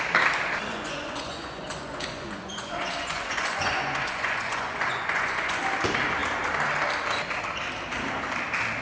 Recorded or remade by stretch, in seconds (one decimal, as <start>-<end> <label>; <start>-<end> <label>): 0.0-0.7 recorded; 0.7-5.6 remade; 5.6-8.8 recorded